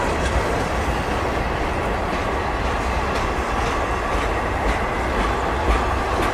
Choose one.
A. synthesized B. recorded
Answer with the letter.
B